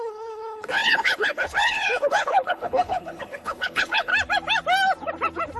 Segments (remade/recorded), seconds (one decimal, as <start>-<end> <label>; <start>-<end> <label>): 0.0-4.1 remade; 4.1-5.6 recorded